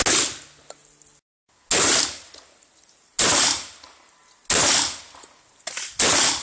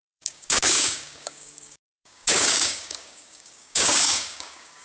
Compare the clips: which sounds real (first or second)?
first